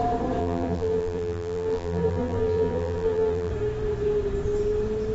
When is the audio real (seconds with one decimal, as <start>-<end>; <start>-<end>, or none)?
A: 0.0-0.4; 3.5-5.1

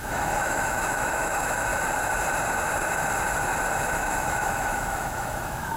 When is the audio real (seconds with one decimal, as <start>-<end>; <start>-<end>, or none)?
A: 1.7-3.8